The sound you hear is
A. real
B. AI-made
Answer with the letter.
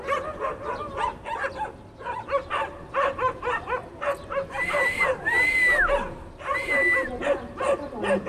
A